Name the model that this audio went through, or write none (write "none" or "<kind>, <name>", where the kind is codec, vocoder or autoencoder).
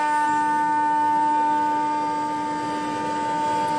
none